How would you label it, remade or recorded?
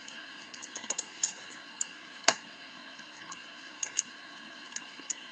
remade